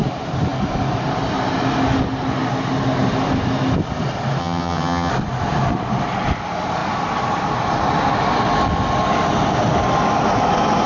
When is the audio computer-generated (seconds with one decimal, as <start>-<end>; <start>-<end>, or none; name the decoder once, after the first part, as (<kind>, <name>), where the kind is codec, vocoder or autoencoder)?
4.4-5.1 (vocoder, HiFi-GAN)